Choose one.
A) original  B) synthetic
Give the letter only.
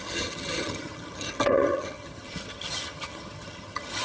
B